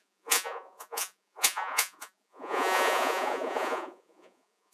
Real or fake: fake